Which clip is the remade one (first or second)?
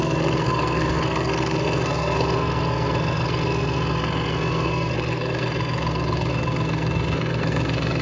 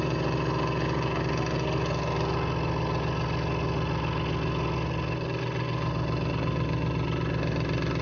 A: first